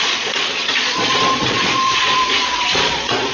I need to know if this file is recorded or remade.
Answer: remade